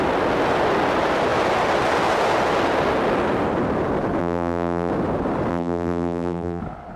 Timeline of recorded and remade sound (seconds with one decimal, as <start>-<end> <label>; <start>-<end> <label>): 0.0-4.2 recorded; 4.2-4.9 remade; 4.9-5.5 recorded; 5.5-6.6 remade; 6.6-7.0 recorded